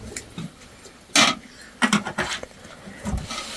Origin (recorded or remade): recorded